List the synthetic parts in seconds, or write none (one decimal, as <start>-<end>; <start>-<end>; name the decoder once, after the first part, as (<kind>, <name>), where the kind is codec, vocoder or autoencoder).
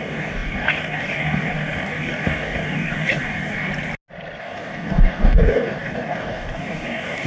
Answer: 0.0-3.7 (codec, DAC); 4.4-7.3